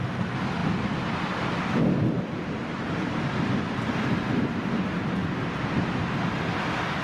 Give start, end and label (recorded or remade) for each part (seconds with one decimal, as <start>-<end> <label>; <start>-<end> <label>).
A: 0.0-0.6 recorded; 0.6-4.8 remade; 4.8-7.0 recorded